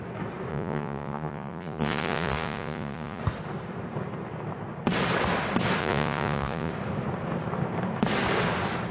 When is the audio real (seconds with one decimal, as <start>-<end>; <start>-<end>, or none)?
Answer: 0.0-0.5; 3.2-5.8; 6.7-8.9